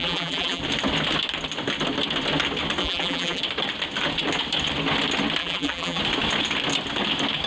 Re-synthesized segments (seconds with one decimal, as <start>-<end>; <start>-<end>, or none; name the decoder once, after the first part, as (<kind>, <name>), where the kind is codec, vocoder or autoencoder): 0.0-0.6 (vocoder, BigVGAN v2); 2.8-3.4; 5.4-6.0